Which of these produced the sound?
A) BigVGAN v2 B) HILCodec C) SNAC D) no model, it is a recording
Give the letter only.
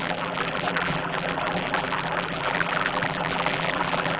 A